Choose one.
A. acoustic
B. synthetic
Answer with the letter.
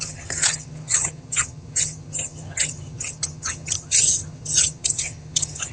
B